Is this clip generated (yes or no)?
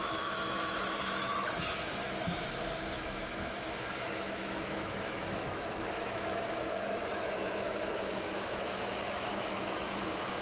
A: yes